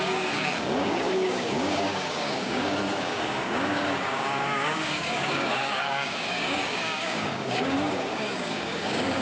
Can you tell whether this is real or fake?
fake